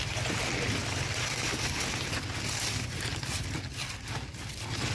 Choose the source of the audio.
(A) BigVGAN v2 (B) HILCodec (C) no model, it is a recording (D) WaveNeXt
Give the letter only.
C